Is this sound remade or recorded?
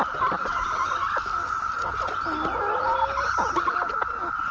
recorded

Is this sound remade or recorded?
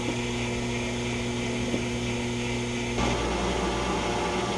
recorded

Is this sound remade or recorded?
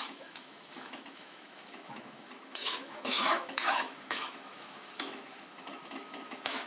remade